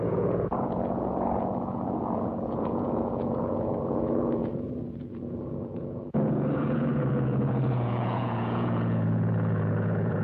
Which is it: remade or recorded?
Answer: remade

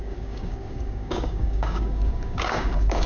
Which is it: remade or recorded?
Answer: remade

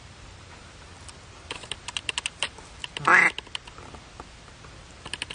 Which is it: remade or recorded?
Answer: remade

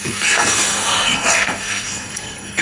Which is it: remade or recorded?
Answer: remade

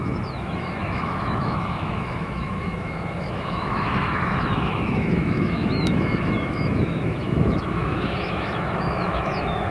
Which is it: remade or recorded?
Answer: remade